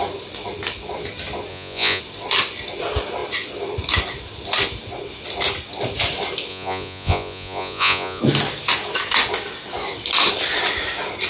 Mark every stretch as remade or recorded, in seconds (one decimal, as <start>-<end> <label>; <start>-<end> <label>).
0.0-1.5 recorded; 1.5-2.0 remade; 2.0-6.5 recorded; 6.5-8.2 remade; 8.2-11.3 recorded